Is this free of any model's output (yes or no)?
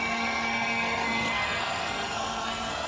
no